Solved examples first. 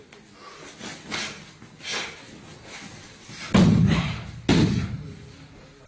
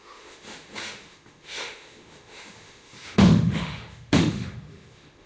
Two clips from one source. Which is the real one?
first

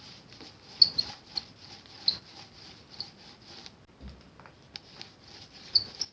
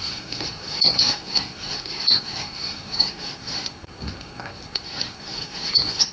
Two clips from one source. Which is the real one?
first